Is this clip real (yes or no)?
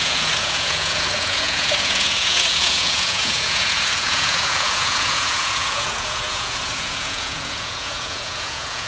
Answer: no